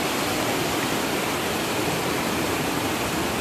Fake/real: real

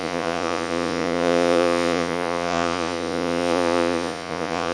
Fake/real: fake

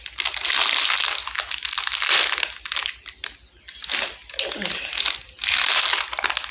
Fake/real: real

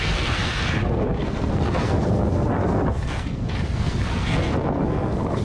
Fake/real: fake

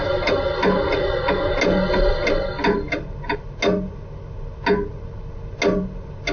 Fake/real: real